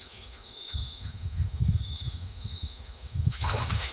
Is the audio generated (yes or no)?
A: yes